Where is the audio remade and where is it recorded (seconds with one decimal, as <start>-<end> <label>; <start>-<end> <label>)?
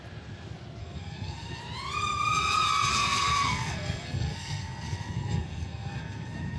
0.0-0.8 recorded; 0.8-1.6 remade; 1.6-2.9 recorded; 2.9-6.6 remade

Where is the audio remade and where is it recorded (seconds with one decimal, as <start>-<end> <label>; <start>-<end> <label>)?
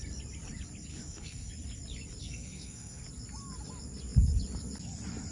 0.0-0.9 recorded; 0.9-1.5 remade; 1.5-2.2 recorded; 2.2-3.0 remade; 3.0-5.3 recorded